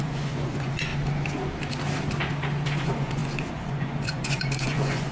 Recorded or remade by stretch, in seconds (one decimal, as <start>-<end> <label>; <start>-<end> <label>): 0.0-0.9 remade; 0.9-2.8 recorded; 2.8-5.1 remade